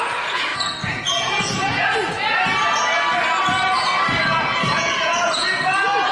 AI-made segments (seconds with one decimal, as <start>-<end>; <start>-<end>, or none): 0.0-2.4; 4.2-6.1